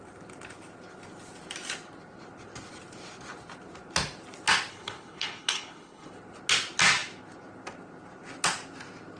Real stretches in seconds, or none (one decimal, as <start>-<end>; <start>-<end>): 0.0-4.7; 6.1-9.2